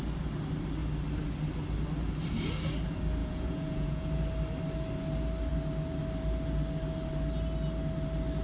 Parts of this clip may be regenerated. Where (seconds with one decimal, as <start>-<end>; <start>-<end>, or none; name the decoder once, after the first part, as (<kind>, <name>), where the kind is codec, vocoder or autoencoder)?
3.2-4.1 (vocoder, Vocos)